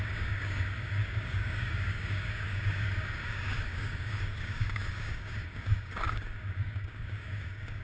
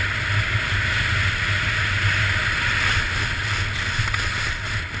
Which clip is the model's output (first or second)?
first